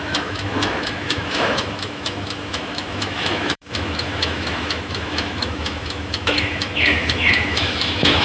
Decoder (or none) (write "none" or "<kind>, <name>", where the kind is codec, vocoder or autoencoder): autoencoder, DAC-VAE